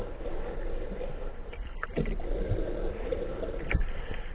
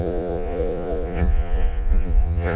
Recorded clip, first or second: first